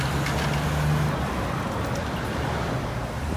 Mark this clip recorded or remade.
recorded